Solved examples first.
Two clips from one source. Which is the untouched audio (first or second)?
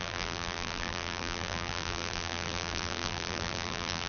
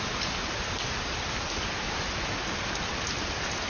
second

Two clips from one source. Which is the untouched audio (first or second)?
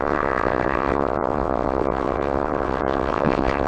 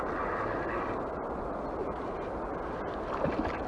second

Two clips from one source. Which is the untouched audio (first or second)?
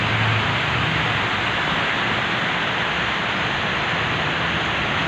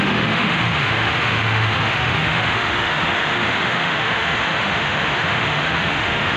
first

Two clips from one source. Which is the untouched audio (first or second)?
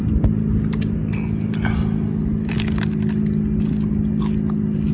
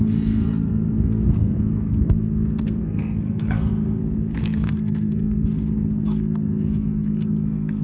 first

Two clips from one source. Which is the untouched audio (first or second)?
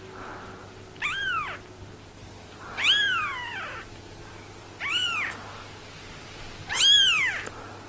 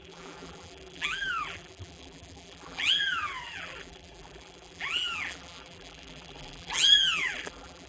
first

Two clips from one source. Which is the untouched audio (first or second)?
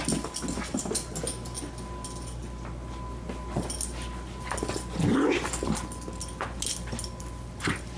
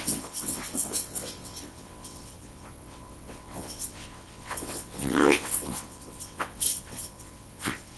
first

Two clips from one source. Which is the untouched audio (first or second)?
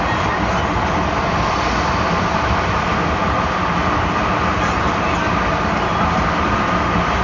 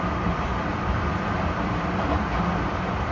first